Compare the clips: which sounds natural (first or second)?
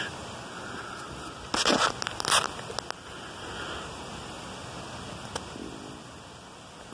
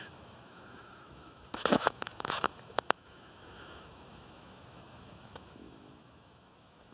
first